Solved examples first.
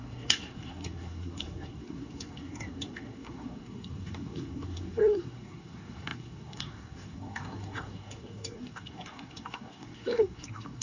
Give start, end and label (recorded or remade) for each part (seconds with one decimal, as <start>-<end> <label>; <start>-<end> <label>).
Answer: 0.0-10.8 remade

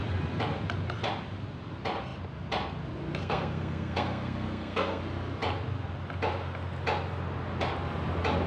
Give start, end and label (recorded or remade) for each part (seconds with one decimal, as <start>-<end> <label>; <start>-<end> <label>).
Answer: 0.0-3.2 recorded; 3.2-5.0 remade; 5.0-8.5 recorded

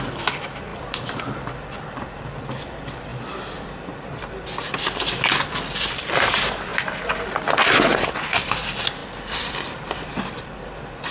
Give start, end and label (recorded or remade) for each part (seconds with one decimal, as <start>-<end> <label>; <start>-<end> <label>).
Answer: 0.0-0.7 recorded; 0.7-2.4 remade; 2.4-6.7 recorded; 6.7-7.4 remade; 7.4-9.0 recorded; 9.0-10.4 remade; 10.4-11.1 recorded

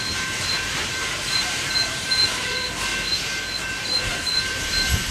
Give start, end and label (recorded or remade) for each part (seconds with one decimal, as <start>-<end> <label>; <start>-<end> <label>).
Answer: 0.0-2.9 remade; 2.9-3.8 recorded; 3.8-5.1 remade

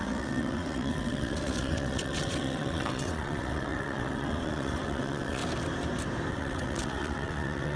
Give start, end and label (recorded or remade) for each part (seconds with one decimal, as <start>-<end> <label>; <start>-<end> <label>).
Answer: 0.0-5.4 remade; 5.4-6.3 recorded; 6.3-7.8 remade